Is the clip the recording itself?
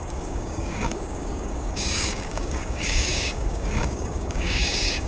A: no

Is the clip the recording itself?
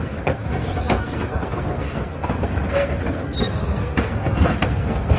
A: no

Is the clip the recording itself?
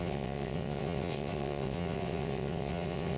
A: no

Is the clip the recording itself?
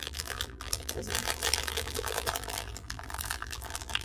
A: no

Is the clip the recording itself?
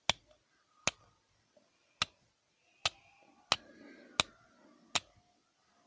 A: yes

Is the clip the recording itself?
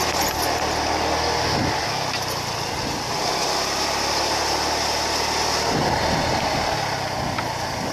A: yes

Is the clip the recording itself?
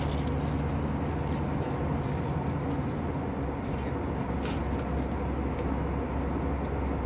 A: yes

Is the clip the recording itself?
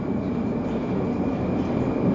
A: yes